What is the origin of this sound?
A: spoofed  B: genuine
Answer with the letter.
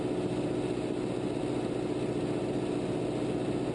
B